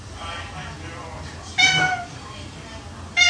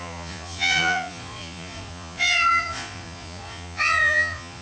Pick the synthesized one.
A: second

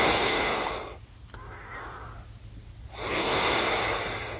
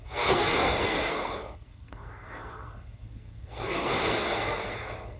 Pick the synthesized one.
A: second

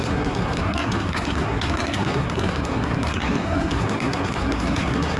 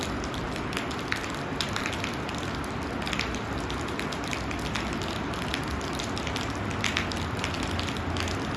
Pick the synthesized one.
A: first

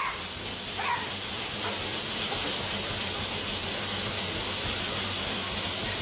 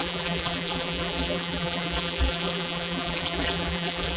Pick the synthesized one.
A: second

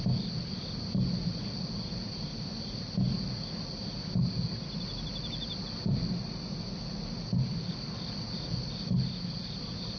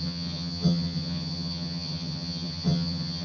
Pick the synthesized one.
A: second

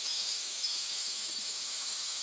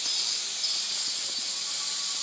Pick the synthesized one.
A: first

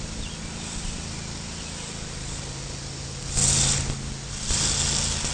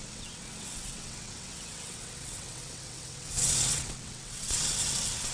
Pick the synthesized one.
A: second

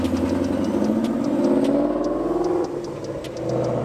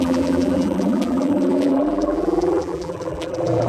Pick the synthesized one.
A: second